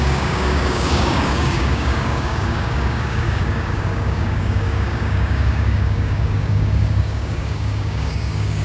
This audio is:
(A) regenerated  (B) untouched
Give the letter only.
A